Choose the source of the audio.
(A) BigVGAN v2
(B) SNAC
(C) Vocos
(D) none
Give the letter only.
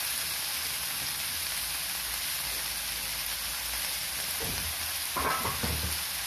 D